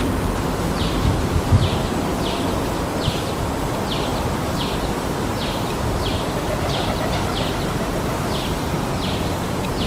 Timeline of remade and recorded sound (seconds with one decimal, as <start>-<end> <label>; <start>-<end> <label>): 0.0-9.9 remade